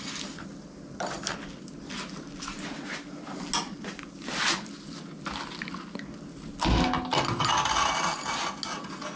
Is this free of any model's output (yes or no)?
yes